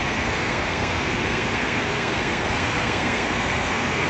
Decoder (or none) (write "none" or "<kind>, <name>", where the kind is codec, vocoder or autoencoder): codec, SNAC